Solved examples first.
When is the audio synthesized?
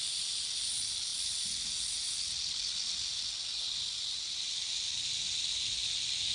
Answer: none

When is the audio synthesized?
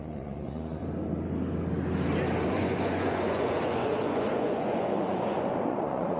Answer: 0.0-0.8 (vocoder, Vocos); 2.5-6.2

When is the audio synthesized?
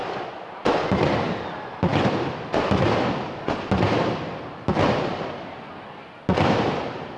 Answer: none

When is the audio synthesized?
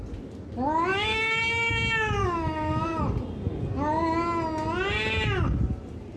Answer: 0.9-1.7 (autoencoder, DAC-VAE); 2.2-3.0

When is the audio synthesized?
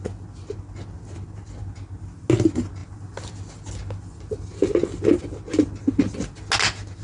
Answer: none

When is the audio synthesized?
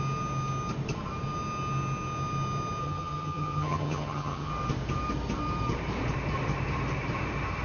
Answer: 2.8-4.5 (vocoder, HiFi-GAN)